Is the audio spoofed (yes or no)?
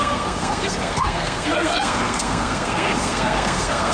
yes